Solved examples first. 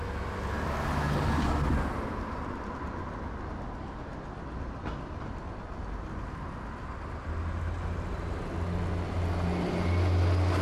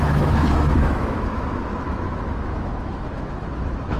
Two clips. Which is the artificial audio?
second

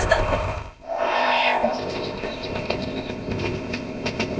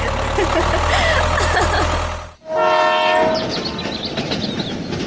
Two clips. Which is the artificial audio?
first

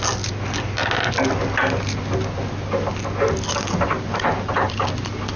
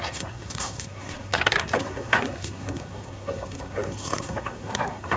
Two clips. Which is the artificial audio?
second